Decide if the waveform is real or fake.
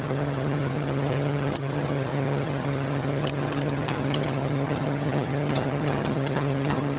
fake